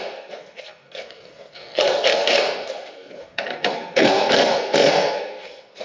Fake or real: fake